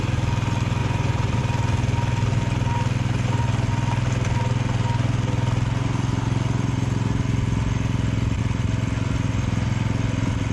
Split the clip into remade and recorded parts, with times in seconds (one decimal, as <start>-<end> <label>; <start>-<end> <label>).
0.0-0.8 recorded; 0.8-1.4 remade; 1.4-10.5 recorded